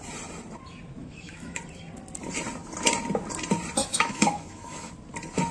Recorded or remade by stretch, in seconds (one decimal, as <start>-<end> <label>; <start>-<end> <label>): 0.0-1.0 recorded; 1.0-1.6 remade; 1.6-3.8 recorded; 3.8-4.9 remade; 4.9-5.5 recorded